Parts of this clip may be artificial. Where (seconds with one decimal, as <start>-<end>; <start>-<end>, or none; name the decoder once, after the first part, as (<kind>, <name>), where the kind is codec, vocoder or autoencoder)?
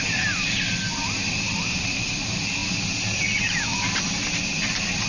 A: none